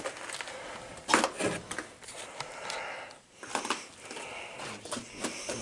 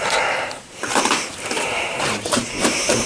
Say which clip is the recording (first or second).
first